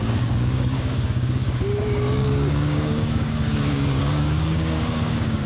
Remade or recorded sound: remade